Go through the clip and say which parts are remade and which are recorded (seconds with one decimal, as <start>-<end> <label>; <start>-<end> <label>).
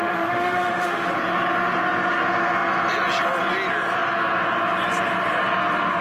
0.0-1.1 remade; 1.1-6.0 recorded